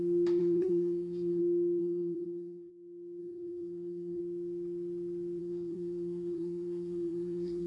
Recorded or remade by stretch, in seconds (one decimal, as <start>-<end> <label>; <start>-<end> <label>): 0.0-0.4 recorded; 0.4-1.4 remade; 1.4-1.8 recorded; 1.8-2.7 remade; 2.7-3.2 recorded; 3.2-4.2 remade; 4.2-5.4 recorded; 5.4-7.7 remade